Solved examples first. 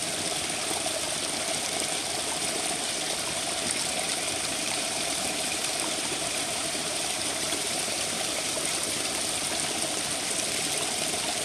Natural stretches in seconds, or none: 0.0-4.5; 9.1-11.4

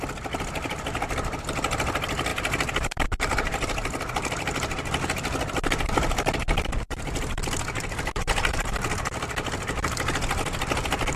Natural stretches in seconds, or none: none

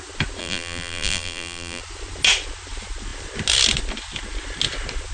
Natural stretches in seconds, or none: 0.0-0.4; 1.8-5.1